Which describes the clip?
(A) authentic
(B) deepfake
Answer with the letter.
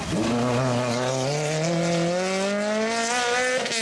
A